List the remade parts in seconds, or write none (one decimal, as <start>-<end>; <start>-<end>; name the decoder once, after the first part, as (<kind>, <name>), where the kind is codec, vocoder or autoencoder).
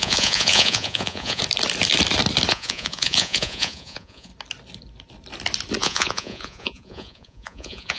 0.0-1.4 (vocoder, Vocos); 2.5-4.3; 5.8-8.0